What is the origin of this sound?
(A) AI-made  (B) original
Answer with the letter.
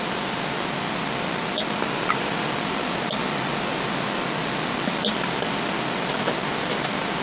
B